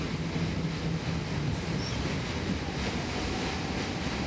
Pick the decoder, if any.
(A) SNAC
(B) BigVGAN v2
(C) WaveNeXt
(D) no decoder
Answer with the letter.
D